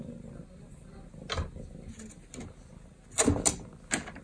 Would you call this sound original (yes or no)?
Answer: yes